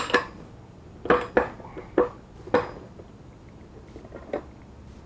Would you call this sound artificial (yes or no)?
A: no